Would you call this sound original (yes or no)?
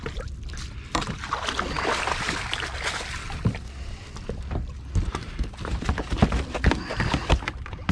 yes